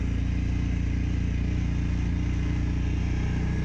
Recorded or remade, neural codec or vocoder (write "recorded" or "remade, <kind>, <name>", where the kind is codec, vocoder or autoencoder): recorded